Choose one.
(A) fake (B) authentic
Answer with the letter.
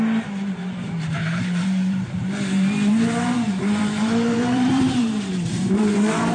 A